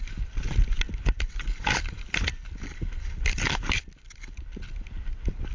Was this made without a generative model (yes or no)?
yes